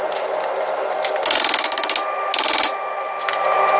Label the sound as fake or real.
real